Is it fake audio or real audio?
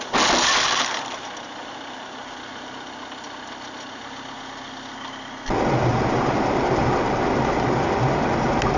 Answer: real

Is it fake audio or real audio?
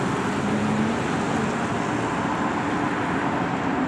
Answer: real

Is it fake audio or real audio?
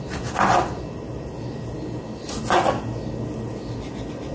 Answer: real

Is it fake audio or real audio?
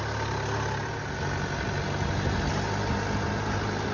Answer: real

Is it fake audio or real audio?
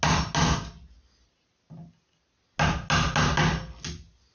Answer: real